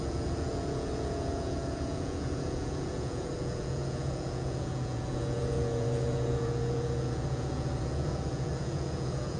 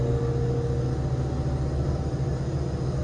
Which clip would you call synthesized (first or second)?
first